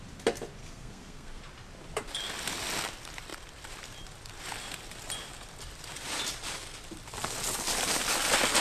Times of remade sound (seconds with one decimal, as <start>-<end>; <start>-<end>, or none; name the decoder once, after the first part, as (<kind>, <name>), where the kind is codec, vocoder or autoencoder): 0.6-1.4 (codec, SNAC)